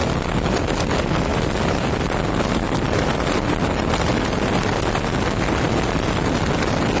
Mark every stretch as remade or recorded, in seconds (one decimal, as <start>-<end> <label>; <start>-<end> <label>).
0.0-7.0 recorded